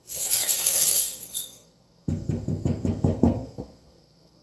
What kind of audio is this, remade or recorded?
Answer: remade